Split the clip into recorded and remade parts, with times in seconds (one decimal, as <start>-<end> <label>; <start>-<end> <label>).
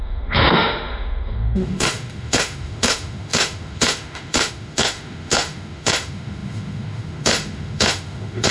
0.0-8.5 remade